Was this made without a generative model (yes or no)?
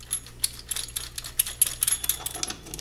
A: yes